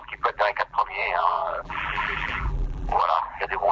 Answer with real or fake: fake